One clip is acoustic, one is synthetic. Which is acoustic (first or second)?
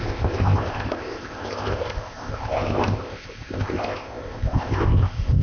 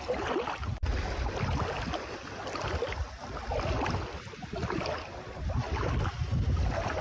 second